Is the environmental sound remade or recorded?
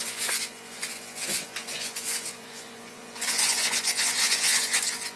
remade